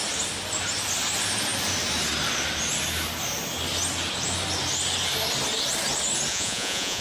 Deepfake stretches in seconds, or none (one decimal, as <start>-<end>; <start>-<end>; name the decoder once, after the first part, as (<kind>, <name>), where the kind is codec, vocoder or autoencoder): 6.3-7.0 (vocoder, Vocos)